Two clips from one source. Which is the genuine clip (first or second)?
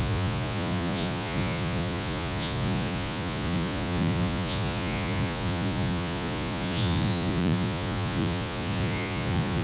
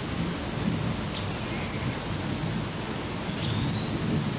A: second